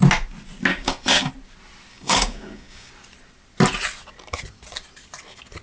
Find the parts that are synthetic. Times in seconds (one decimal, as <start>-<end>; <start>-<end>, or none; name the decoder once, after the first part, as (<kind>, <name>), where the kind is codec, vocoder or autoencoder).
0.7-1.3 (codec, DAC); 1.9-2.9